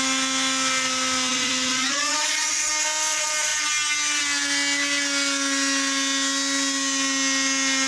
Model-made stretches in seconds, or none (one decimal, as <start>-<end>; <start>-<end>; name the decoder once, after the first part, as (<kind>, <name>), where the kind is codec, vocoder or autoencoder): 1.3-2.7 (vocoder, Vocos)